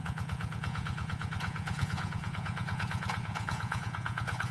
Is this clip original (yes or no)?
no